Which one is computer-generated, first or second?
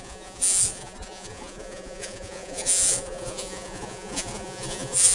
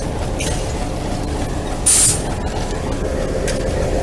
first